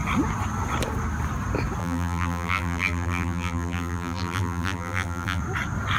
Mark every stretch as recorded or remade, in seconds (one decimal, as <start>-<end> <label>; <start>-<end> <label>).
0.0-1.8 recorded; 1.8-5.4 remade; 5.4-6.0 recorded